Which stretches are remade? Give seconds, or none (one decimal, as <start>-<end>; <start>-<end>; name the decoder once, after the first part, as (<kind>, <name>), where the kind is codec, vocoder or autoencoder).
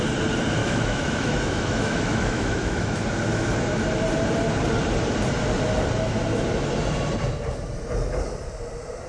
0.6-3.0 (autoencoder, DAC-VAE)